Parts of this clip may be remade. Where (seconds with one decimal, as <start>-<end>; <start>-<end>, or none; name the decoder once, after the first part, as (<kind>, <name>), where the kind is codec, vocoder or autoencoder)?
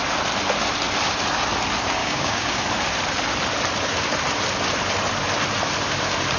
2.0-2.6 (codec, DAC)